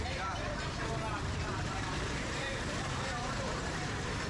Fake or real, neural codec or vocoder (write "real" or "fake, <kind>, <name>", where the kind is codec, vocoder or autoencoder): fake, vocoder, BigVGAN v2